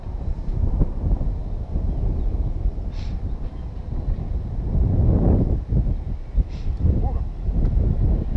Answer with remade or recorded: recorded